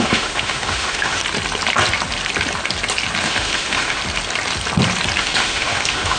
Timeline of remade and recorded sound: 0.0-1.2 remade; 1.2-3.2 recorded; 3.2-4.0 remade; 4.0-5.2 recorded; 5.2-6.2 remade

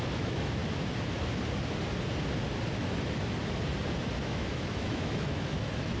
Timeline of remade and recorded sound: 0.0-0.6 remade; 0.6-4.2 recorded; 4.2-6.0 remade